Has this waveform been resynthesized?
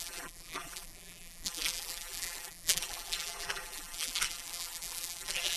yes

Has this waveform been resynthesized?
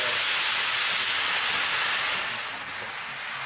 no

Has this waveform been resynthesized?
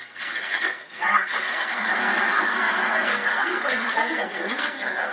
yes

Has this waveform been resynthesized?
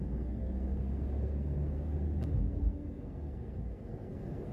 yes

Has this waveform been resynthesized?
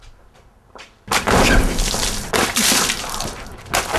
no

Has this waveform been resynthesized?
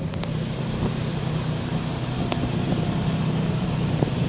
yes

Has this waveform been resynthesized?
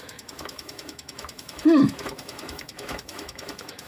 yes